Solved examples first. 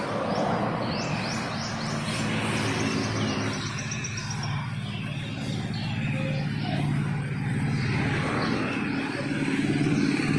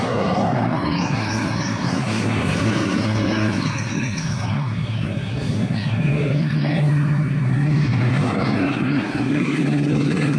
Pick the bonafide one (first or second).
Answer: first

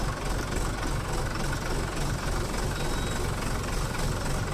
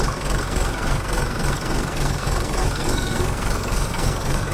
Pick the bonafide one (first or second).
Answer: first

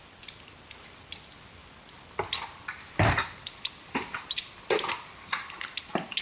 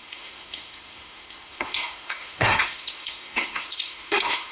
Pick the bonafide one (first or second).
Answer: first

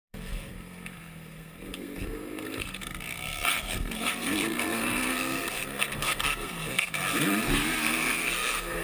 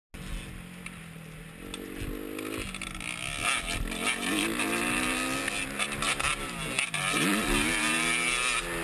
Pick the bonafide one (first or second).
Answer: second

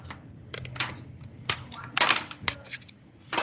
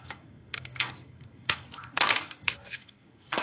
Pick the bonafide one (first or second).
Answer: first